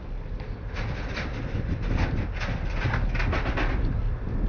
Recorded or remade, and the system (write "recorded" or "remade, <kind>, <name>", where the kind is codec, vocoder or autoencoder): recorded